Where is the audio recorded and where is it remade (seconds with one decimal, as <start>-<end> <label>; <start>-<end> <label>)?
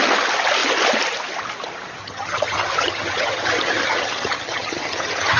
0.0-2.0 recorded; 2.0-5.4 remade